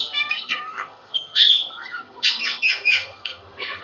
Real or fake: fake